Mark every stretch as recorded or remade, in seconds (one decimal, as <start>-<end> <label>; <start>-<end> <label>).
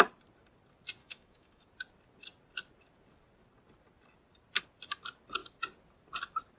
0.0-1.0 recorded; 1.0-1.6 remade; 1.6-6.6 recorded